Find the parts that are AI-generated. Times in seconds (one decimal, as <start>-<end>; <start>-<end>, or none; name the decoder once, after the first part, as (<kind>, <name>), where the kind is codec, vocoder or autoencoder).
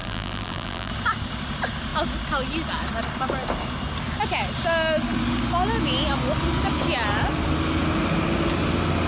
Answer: 0.0-0.9 (vocoder, BigVGAN v2)